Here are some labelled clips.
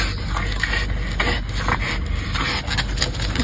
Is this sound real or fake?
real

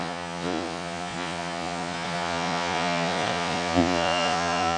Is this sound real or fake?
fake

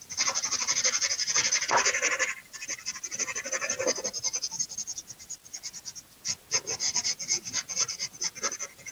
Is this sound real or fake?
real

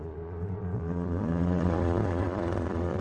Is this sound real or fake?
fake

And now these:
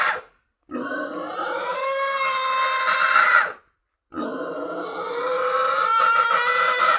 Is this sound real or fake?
real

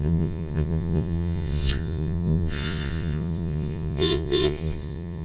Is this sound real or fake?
fake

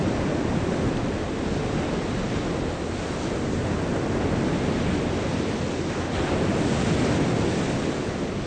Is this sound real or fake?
real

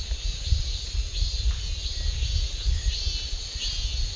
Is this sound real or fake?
real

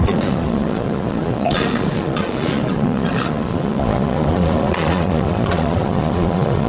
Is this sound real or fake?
fake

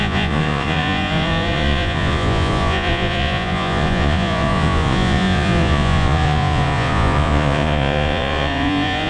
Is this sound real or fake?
fake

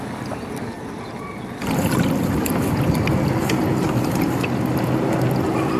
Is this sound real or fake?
real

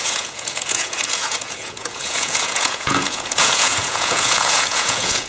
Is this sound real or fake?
fake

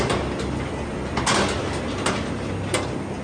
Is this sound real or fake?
real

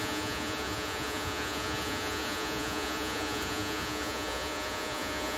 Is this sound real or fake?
fake